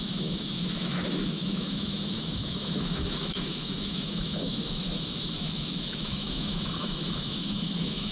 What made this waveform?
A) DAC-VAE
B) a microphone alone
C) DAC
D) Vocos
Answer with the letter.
A